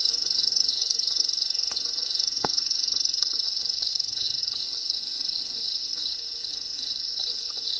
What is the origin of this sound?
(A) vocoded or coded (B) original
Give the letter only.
A